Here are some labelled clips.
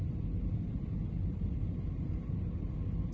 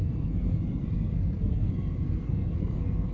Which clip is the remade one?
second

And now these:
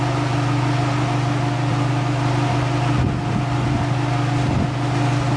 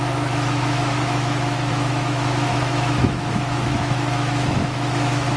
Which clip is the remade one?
second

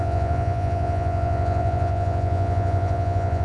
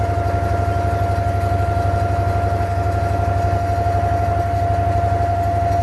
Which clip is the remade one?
first